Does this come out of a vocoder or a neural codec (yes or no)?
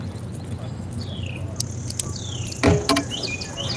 no